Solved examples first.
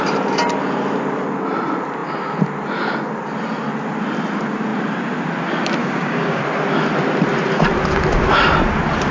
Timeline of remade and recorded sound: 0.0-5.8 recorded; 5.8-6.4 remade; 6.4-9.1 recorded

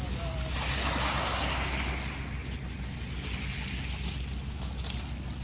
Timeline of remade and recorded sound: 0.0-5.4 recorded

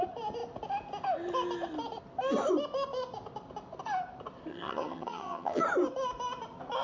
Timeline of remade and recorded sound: 0.0-4.5 recorded; 4.5-5.6 remade; 5.6-6.8 recorded

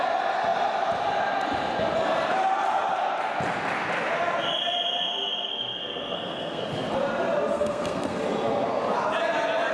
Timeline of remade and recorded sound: 0.0-5.5 recorded; 5.5-6.6 remade; 6.6-7.5 recorded; 7.5-8.2 remade; 8.2-9.7 recorded

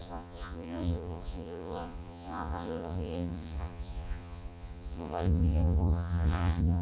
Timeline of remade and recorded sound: 0.0-6.8 remade